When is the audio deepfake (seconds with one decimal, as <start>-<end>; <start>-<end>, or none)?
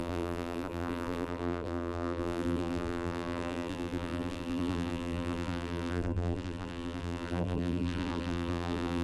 0.0-9.0